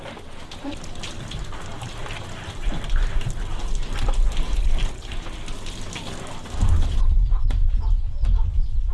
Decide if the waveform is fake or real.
real